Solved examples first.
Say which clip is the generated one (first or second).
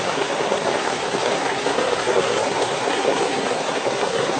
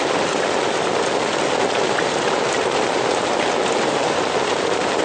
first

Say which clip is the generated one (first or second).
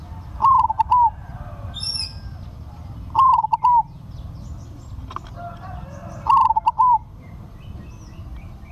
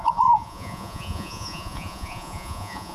second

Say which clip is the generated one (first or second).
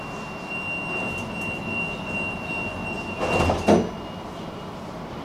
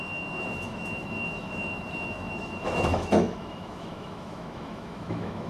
second